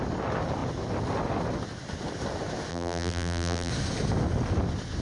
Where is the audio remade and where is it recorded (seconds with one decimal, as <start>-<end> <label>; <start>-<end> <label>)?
0.0-2.7 recorded; 2.7-3.7 remade; 3.7-5.0 recorded